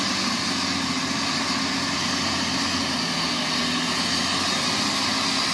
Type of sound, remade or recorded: recorded